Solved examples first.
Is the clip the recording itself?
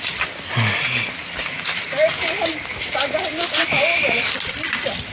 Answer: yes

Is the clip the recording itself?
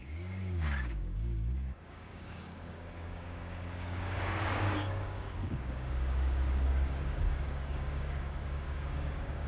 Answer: no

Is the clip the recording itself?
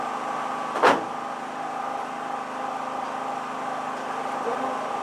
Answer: yes